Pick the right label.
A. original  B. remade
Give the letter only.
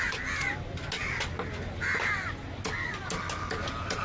A